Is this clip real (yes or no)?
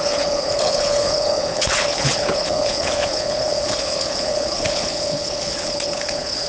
no